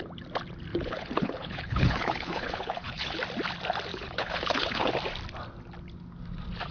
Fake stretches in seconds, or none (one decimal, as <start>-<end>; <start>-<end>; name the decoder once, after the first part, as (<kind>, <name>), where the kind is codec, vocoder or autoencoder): 0.7-3.2 (codec, HILCodec); 3.9-4.9